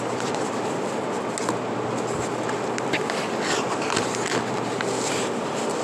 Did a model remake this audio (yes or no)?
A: no